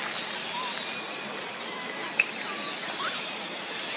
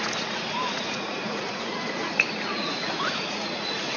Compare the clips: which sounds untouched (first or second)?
first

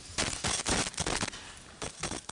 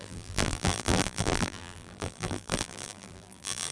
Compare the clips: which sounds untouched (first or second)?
first